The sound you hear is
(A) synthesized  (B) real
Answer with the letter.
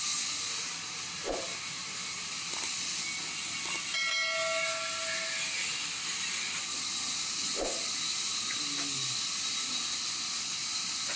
B